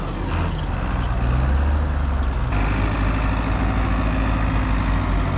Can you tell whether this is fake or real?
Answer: real